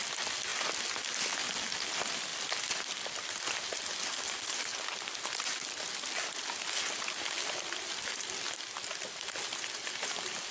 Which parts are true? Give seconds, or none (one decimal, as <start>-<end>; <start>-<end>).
0.0-10.5